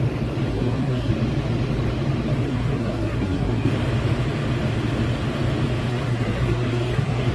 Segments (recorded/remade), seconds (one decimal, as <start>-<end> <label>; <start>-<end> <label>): 0.0-0.5 recorded; 0.5-1.1 remade; 1.1-2.5 recorded; 2.5-3.7 remade; 3.7-5.9 recorded; 5.9-7.3 remade